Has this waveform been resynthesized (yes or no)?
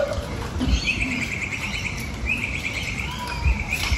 yes